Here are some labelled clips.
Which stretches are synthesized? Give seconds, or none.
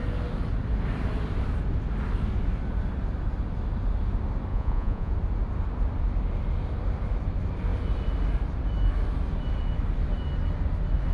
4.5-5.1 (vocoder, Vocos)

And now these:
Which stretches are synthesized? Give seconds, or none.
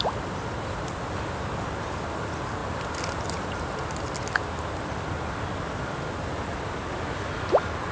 none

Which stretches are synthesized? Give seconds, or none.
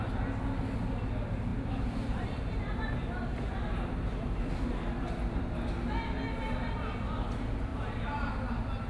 1.5-4.5 (vocoder, BigVGAN v2); 7.7-8.3